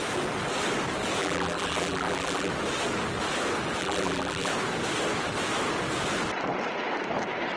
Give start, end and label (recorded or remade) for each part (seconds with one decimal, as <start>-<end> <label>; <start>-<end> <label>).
0.0-1.2 recorded; 1.2-2.5 remade; 2.5-3.8 recorded; 3.8-4.5 remade; 4.5-7.6 recorded